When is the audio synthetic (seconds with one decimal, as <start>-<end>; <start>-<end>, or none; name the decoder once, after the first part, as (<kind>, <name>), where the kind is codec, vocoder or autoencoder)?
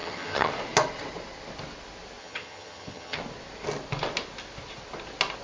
0.0-0.5 (vocoder, HiFi-GAN); 2.2-3.2